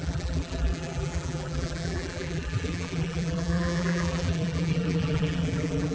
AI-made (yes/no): yes